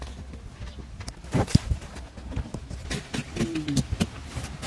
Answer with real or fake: real